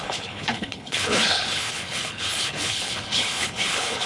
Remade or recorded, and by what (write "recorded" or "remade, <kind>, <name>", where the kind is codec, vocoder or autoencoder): remade, codec, HILCodec